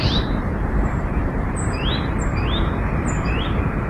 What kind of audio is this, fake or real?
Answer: fake